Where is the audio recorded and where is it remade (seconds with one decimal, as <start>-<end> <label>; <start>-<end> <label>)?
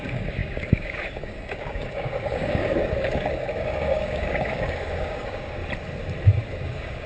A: 0.0-5.6 remade; 5.6-6.5 recorded; 6.5-7.1 remade